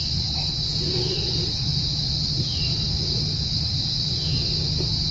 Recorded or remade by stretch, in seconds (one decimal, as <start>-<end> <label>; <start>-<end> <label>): 0.0-5.1 recorded